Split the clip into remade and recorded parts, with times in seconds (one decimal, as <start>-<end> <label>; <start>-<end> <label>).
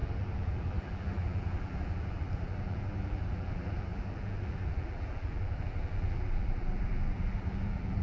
0.0-8.0 remade